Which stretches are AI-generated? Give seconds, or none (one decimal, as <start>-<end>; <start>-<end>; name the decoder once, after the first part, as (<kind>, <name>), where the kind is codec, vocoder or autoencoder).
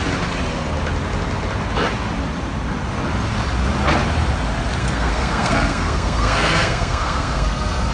4.8-7.9 (codec, SNAC)